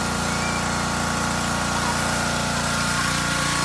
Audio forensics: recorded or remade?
recorded